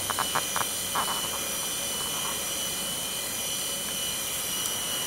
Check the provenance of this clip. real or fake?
real